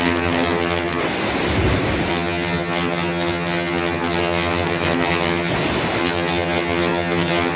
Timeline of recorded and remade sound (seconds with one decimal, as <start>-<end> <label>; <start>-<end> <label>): 0.0-1.0 remade; 1.0-2.1 recorded; 2.1-5.5 remade; 5.5-6.0 recorded; 6.0-7.6 remade